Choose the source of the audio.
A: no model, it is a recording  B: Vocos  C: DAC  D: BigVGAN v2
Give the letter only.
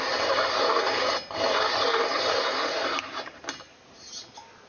A